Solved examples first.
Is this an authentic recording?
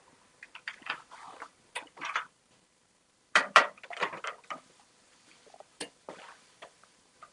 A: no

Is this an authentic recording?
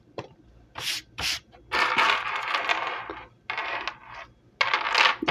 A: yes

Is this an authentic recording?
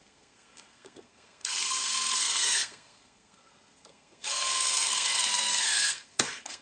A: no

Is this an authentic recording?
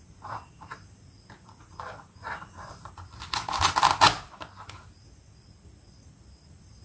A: yes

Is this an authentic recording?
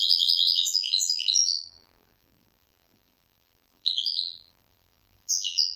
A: no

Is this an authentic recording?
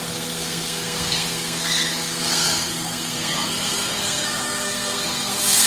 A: no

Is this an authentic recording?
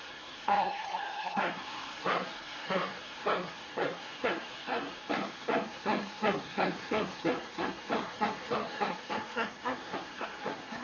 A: no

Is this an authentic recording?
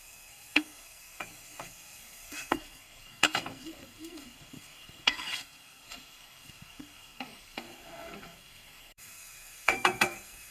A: no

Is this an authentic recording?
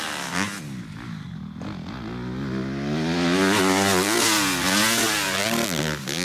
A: yes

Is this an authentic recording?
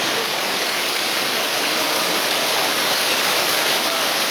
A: no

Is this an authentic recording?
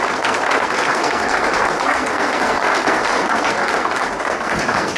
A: no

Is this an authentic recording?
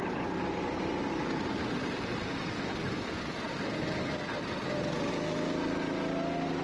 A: yes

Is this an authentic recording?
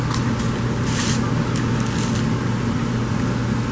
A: yes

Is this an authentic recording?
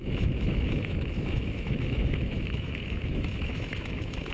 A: no